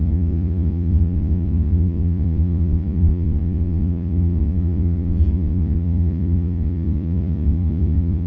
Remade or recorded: remade